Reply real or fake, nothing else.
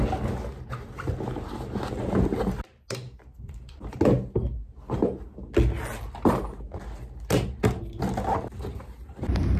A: real